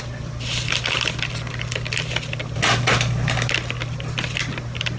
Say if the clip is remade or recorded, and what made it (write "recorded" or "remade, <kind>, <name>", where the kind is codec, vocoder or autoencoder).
recorded